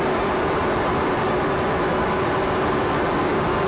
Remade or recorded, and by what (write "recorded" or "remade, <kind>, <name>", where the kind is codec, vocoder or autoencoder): recorded